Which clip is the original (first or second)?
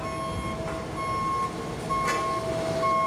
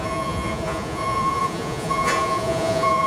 first